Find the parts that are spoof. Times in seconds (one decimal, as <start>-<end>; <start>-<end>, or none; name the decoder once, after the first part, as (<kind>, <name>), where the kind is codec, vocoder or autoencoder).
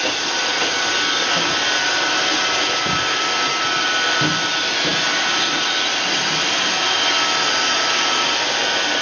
none